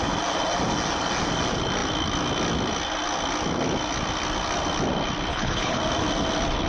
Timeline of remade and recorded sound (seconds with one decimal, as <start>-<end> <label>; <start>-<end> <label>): 0.0-5.3 recorded; 5.3-5.8 remade; 5.8-6.7 recorded